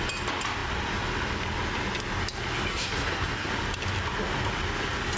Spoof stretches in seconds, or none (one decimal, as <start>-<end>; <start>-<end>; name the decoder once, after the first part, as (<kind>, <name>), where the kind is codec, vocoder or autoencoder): 2.7-3.5 (codec, SNAC)